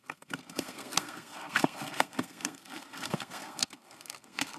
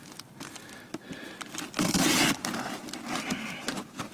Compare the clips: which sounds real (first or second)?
second